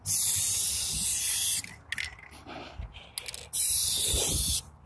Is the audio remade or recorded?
recorded